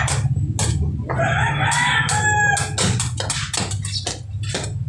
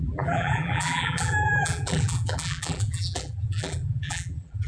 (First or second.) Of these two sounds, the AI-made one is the second